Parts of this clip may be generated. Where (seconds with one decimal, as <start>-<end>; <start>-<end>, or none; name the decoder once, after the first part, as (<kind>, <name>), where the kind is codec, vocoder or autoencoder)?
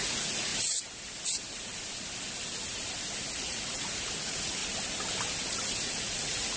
0.0-0.5 (vocoder, Vocos); 3.3-4.6; 5.8-6.6